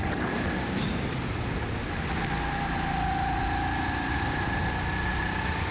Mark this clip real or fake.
real